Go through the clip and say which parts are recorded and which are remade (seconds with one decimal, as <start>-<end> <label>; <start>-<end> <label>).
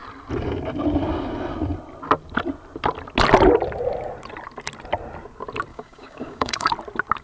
0.0-5.7 recorded; 5.7-6.7 remade; 6.7-7.2 recorded